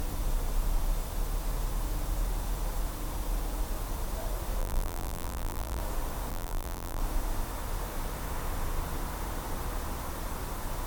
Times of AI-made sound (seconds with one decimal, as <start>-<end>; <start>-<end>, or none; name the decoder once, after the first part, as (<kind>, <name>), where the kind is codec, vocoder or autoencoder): 4.6-5.8 (vocoder, BigVGAN v2); 6.3-7.0